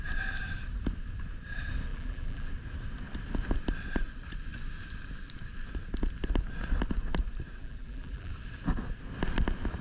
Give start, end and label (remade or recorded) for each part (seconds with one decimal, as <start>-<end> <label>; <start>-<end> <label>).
0.0-1.9 recorded; 1.9-2.5 remade; 2.5-7.6 recorded; 7.6-8.3 remade; 8.3-9.8 recorded